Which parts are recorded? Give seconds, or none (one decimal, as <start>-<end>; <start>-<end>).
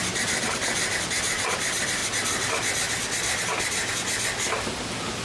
0.5-5.2